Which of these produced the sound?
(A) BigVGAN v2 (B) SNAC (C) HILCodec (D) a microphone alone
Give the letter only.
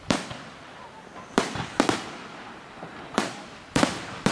A